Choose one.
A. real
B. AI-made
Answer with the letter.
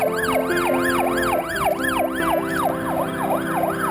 A